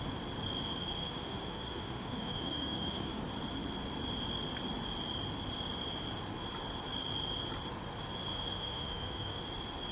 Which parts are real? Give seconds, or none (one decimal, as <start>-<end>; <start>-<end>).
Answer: 0.0-1.0; 3.2-8.3; 9.4-9.9